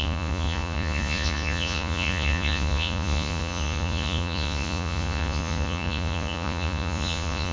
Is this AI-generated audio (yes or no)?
yes